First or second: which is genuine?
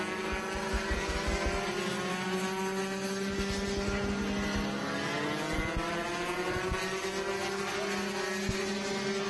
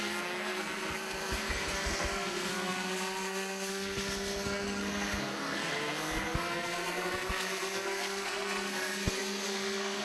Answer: first